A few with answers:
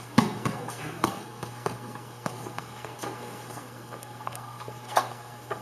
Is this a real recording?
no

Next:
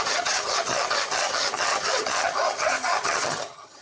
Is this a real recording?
no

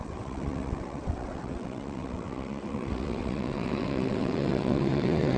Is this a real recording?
no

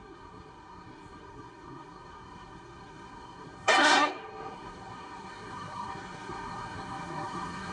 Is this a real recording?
no